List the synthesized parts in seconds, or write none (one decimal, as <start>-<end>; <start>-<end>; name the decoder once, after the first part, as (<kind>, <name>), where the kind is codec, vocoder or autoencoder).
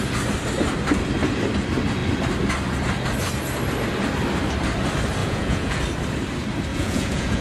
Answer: 5.2-5.8 (vocoder, Vocos); 6.7-7.4